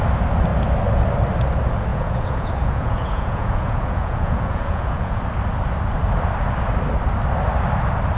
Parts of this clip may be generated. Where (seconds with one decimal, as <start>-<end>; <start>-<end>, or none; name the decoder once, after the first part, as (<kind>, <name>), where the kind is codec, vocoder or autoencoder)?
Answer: 1.9-5.2 (vocoder, Vocos)

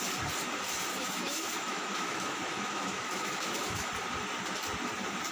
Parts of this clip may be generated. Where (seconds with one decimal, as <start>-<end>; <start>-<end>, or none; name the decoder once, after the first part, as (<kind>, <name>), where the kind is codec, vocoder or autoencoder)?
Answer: 0.9-3.9 (autoencoder, DAC-VAE)

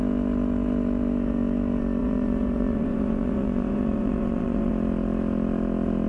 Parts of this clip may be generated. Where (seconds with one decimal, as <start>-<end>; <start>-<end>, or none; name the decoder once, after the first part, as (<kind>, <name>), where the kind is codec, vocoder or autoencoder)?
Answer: 2.0-4.7 (vocoder, Vocos)

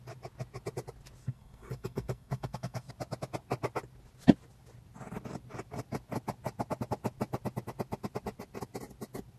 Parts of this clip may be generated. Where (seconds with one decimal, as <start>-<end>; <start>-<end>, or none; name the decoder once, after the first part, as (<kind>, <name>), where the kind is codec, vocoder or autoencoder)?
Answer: 1.2-2.9 (codec, SNAC)